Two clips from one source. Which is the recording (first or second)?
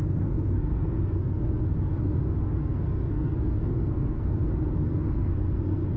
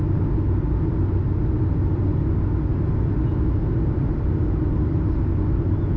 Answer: second